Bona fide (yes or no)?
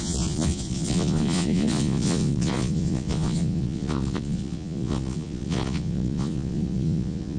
no